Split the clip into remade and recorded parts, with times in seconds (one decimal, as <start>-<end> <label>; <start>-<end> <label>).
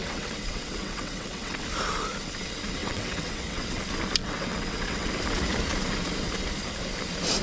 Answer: 0.0-1.6 remade; 1.6-2.8 recorded; 2.8-3.8 remade; 3.8-4.2 recorded; 4.2-5.1 remade; 5.1-7.4 recorded